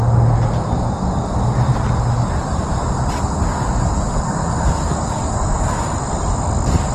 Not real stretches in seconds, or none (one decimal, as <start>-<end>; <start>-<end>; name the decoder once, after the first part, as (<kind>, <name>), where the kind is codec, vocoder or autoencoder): none